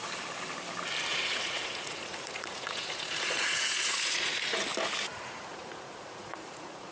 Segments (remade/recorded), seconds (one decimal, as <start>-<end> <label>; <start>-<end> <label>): 0.0-1.1 recorded; 1.1-4.6 remade; 4.6-5.5 recorded; 5.5-6.9 remade